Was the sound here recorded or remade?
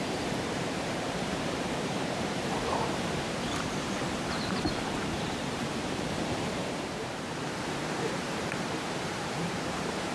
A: remade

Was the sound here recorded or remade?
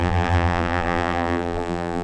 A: remade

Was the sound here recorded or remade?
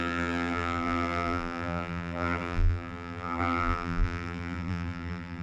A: remade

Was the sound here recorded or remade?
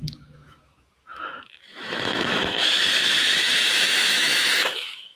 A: remade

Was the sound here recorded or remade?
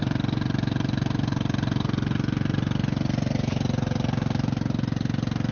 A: recorded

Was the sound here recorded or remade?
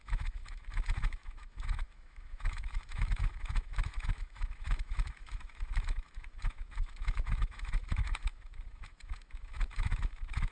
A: remade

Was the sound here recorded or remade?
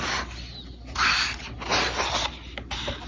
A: recorded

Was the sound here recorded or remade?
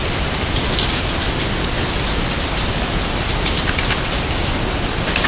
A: recorded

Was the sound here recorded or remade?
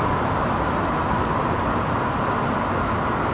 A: recorded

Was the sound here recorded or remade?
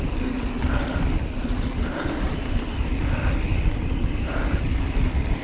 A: recorded